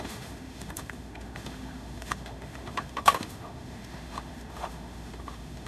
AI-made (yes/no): yes